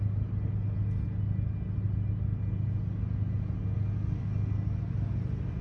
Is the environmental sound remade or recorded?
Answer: recorded